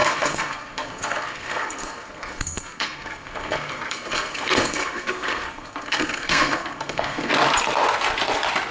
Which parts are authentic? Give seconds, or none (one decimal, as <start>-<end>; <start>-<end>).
7.3-8.7